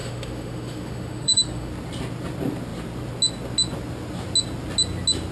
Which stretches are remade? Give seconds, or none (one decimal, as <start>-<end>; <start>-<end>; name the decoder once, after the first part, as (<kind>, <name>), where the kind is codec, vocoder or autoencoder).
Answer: 0.0-1.7 (autoencoder, DAC-VAE)